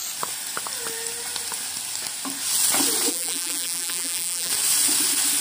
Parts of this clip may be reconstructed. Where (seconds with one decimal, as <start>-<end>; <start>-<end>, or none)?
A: 3.1-4.5